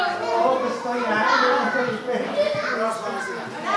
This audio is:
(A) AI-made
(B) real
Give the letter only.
B